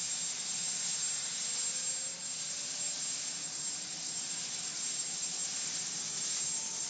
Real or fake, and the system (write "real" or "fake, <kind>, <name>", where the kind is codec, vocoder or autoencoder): real